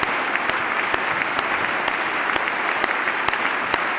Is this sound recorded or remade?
recorded